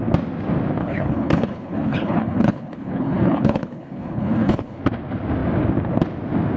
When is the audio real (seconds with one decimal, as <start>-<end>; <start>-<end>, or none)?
0.0-0.8; 4.8-6.6